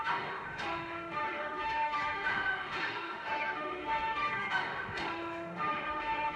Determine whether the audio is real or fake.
fake